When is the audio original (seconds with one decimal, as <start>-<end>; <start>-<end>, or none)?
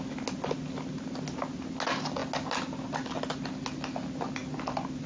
0.0-4.4